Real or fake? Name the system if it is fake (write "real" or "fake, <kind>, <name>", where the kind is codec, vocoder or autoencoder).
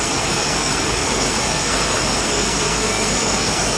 fake, codec, SNAC